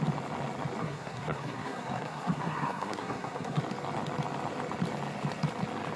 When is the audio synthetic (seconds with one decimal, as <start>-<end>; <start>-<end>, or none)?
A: 0.8-3.6